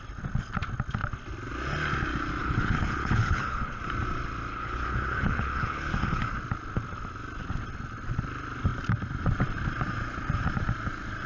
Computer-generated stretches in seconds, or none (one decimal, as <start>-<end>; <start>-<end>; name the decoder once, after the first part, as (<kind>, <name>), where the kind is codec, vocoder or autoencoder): 2.4-3.8 (codec, HILCodec); 4.5-6.2